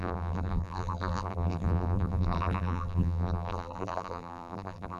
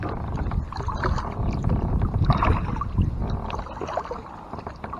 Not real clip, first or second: first